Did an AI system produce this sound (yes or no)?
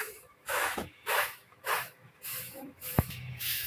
yes